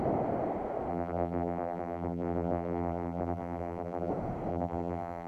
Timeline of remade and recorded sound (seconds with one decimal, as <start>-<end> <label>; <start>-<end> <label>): 0.0-0.9 recorded; 0.9-4.1 remade; 4.1-4.5 recorded; 4.5-5.3 remade